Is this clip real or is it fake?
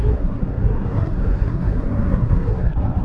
fake